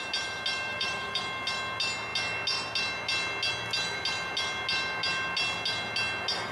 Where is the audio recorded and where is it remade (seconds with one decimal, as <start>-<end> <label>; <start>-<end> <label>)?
0.0-0.7 recorded; 0.7-1.2 remade; 1.2-6.5 recorded